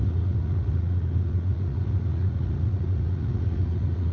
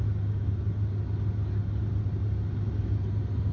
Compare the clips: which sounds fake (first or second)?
first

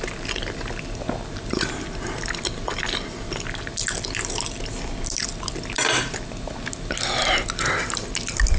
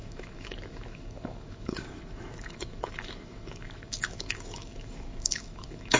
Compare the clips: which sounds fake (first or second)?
second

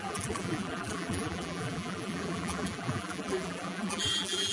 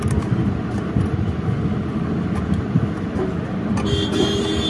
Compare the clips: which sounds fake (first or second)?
first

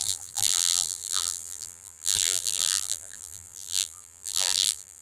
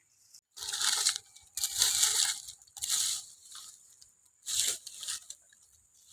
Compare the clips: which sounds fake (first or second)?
first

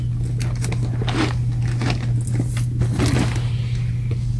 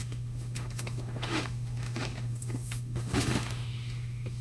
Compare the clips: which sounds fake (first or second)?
second